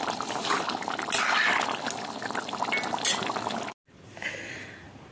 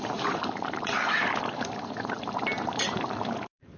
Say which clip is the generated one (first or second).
second